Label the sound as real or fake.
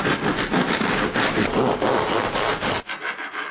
real